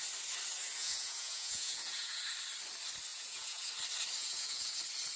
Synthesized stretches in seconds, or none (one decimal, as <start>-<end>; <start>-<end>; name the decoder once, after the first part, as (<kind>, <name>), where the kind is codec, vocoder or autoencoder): 0.8-2.2 (vocoder, Vocos); 3.1-3.7; 4.2-4.8